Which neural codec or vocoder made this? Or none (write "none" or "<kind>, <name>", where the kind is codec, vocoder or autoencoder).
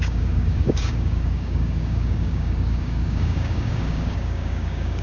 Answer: codec, DAC